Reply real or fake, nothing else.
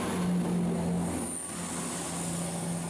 real